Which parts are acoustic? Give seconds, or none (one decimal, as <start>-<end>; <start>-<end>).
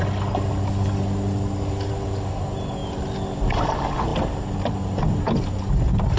0.0-6.2